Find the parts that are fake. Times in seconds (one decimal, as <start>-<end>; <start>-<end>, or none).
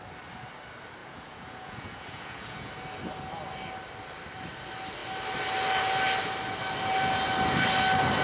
1.0-2.7